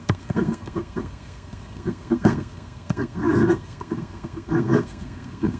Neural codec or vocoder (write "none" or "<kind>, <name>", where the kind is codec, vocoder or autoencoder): codec, SNAC